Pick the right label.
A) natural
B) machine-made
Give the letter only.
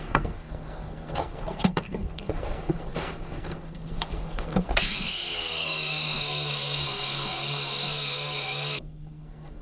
B